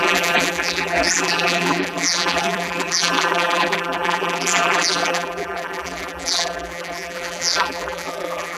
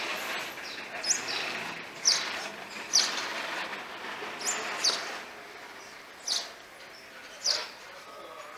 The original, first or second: second